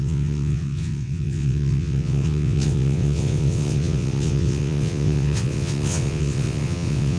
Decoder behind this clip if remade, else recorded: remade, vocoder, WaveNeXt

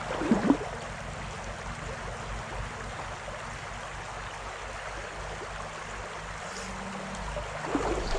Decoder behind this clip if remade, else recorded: recorded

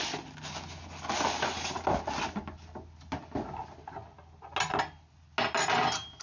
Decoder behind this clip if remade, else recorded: recorded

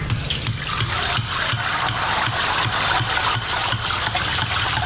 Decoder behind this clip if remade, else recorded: recorded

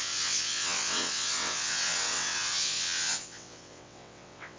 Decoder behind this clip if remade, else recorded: remade, vocoder, WaveNeXt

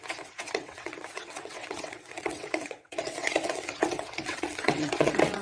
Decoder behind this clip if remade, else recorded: remade, vocoder, WaveNeXt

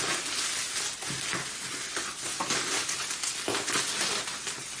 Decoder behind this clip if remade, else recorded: recorded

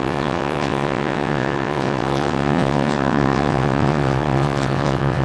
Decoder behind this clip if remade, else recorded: remade, vocoder, WaveNeXt